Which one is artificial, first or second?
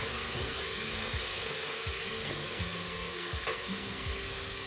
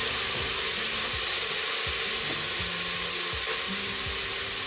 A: first